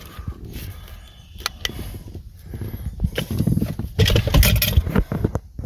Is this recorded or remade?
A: recorded